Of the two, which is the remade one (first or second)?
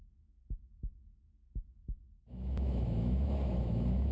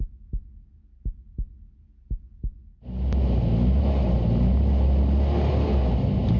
first